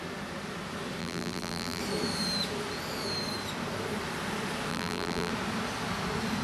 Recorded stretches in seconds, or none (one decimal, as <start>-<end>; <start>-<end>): 0.0-1.0; 1.8-4.7; 5.3-6.4